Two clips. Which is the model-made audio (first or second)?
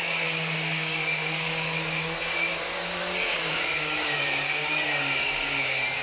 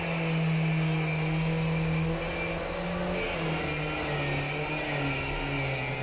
first